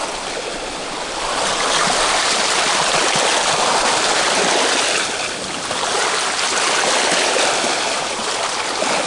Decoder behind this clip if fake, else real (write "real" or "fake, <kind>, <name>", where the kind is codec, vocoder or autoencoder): real